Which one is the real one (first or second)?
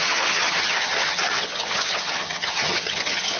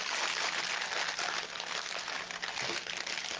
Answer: second